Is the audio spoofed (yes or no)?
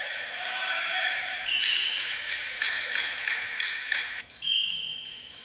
yes